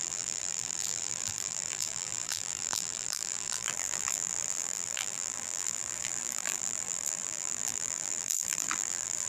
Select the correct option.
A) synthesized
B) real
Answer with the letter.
A